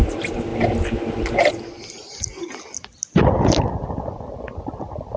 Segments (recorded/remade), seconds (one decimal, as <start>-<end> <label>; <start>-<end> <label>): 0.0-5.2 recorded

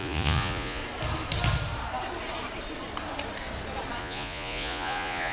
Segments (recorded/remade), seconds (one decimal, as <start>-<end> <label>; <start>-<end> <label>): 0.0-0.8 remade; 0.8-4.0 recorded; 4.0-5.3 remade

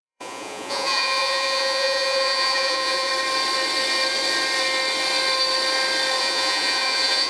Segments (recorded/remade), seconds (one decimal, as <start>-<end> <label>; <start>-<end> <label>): 0.0-3.1 remade; 3.1-6.2 recorded; 6.2-7.3 remade